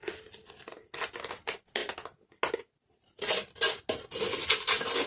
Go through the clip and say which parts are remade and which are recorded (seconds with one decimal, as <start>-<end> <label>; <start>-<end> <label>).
0.0-5.1 recorded